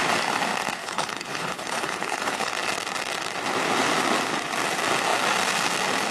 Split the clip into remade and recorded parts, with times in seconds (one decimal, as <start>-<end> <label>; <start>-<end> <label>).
0.0-0.8 recorded; 0.8-2.5 remade; 2.5-6.1 recorded